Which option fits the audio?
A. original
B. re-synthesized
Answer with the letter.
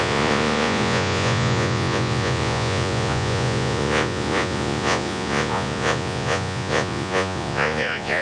B